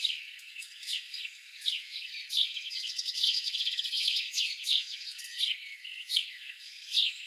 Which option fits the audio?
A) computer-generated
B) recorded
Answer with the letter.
A